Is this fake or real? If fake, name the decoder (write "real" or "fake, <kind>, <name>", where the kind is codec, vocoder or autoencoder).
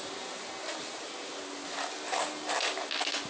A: real